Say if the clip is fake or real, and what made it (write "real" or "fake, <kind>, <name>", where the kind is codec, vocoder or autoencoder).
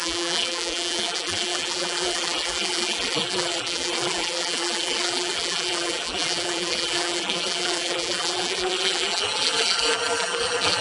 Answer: fake, vocoder, BigVGAN v2